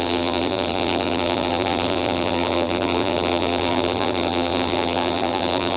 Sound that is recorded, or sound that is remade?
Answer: remade